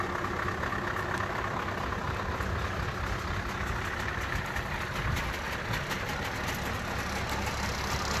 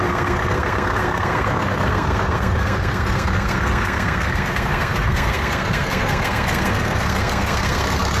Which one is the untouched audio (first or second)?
first